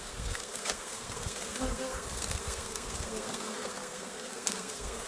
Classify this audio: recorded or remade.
remade